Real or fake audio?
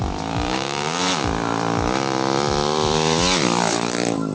fake